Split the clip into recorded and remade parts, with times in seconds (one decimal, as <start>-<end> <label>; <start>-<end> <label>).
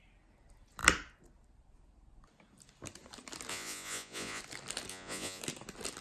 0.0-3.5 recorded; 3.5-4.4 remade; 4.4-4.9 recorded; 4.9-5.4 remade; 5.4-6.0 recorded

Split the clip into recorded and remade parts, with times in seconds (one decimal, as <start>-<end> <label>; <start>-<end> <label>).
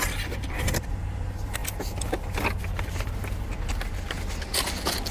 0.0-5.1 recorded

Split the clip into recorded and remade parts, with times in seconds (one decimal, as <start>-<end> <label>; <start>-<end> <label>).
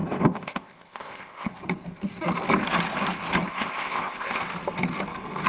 0.0-1.6 remade; 1.6-3.5 recorded; 3.5-4.4 remade; 4.4-5.5 recorded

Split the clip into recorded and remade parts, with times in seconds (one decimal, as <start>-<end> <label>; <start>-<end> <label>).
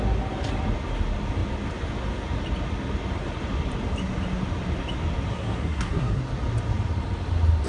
0.0-5.3 recorded; 5.3-6.2 remade; 6.2-7.7 recorded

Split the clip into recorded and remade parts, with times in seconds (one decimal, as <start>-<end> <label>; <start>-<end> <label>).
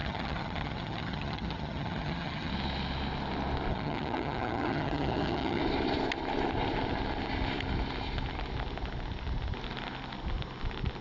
0.0-2.5 remade; 2.5-3.7 recorded; 3.7-5.6 remade; 5.6-11.0 recorded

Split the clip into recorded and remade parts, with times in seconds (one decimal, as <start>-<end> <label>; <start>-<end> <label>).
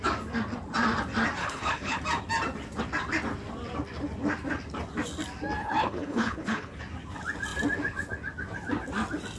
0.0-1.4 recorded; 1.4-2.0 remade; 2.0-5.6 recorded; 5.6-6.8 remade; 6.8-9.4 recorded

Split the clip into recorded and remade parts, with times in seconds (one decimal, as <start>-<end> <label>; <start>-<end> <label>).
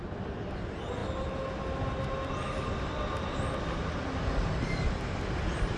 0.0-5.8 recorded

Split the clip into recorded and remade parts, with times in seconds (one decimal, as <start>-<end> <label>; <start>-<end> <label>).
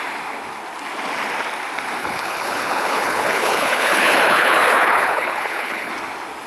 0.0-2.0 recorded; 2.0-5.9 remade; 5.9-6.5 recorded